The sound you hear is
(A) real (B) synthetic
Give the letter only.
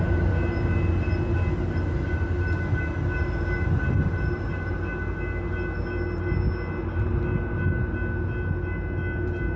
A